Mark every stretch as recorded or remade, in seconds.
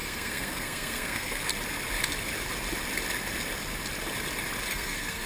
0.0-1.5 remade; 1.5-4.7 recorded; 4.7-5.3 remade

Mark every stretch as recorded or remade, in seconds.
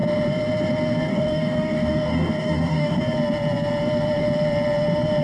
0.0-1.1 recorded; 1.1-3.0 remade; 3.0-5.2 recorded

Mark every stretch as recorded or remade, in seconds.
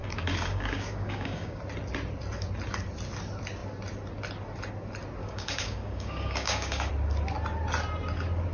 0.0-1.6 remade; 1.6-5.2 recorded; 5.2-6.9 remade; 6.9-8.5 recorded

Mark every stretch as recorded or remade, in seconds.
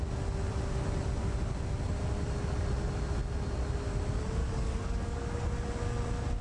0.0-4.4 recorded; 4.4-5.4 remade; 5.4-6.4 recorded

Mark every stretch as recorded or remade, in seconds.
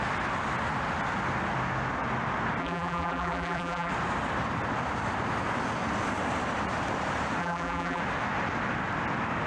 0.0-2.6 recorded; 2.6-3.9 remade; 3.9-7.4 recorded; 7.4-8.0 remade; 8.0-9.5 recorded